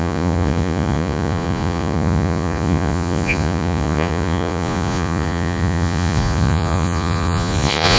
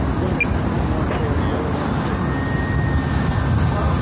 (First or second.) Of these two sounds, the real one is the second